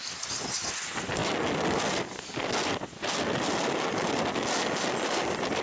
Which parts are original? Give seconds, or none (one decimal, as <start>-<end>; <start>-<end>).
0.0-5.6